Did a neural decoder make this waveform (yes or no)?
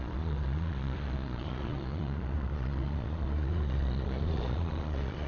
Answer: yes